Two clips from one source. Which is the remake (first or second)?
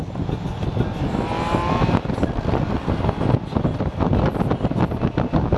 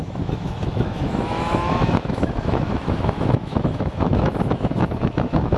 second